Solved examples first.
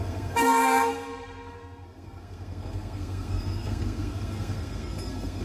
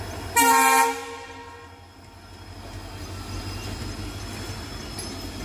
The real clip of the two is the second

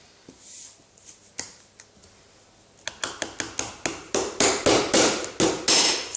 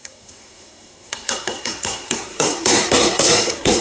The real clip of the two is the first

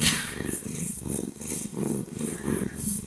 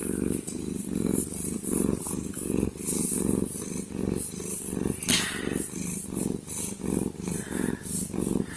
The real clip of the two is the second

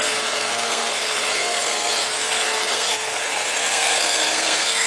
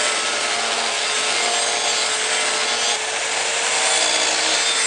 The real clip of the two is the second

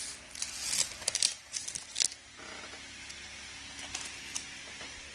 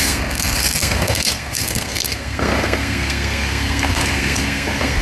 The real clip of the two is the first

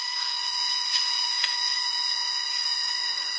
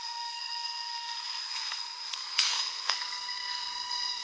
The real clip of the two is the first